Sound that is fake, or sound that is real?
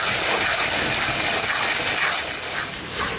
real